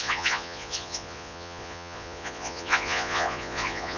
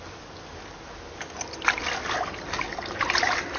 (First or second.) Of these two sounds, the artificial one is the first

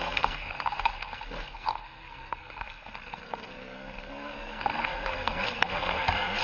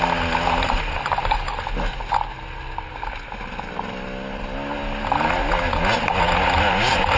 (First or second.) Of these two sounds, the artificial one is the first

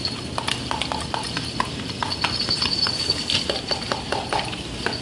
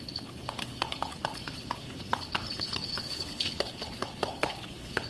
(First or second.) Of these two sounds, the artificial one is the second